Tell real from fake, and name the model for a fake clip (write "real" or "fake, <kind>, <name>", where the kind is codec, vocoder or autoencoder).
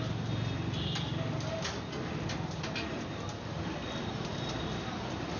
real